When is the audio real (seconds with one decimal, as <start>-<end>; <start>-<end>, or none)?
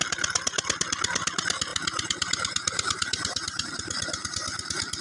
0.0-1.7; 3.7-5.0